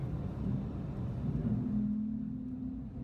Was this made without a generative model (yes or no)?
yes